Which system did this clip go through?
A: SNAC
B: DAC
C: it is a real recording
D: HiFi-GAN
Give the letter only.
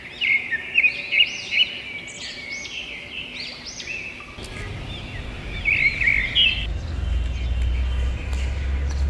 C